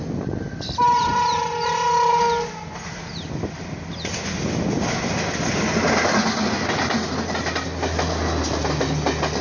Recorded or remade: recorded